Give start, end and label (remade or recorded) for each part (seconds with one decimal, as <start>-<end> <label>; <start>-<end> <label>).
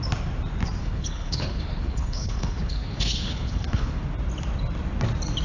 0.0-0.8 recorded; 0.8-4.0 remade; 4.0-5.4 recorded